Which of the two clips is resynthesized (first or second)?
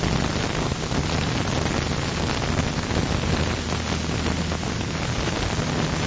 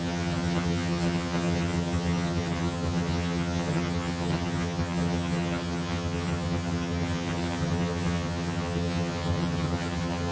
second